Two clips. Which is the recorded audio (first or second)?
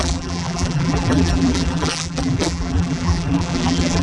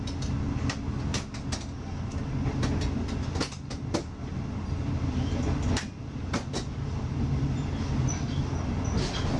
second